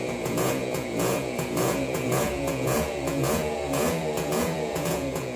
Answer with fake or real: fake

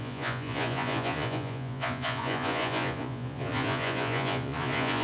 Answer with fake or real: fake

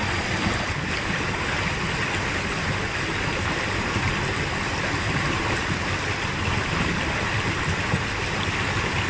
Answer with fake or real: real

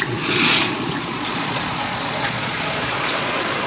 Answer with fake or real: fake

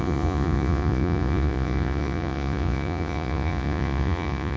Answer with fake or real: fake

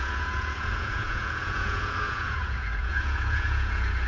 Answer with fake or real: fake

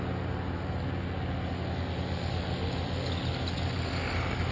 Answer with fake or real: real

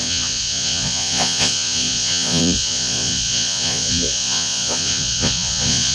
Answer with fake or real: fake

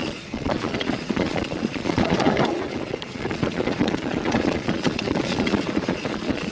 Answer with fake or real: fake